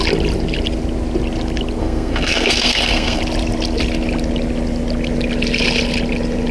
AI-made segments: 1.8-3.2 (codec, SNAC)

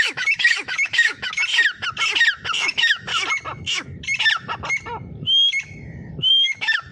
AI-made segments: 0.0-1.4 (autoencoder, DAC-VAE); 2.5-3.1; 6.3-6.9